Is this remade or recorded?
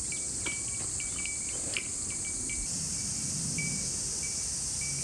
recorded